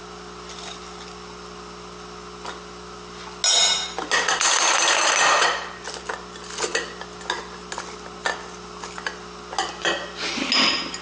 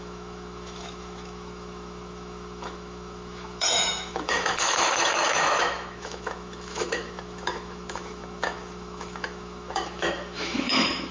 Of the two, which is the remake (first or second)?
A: second